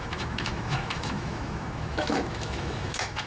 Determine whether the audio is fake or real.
fake